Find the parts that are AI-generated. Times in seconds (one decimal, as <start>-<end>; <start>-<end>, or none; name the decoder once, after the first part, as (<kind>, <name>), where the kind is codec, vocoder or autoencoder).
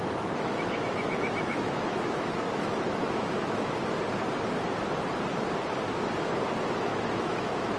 0.0-3.8 (autoencoder, DAC-VAE); 6.8-7.8